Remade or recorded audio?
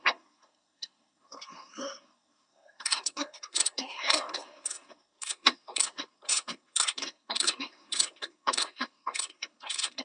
remade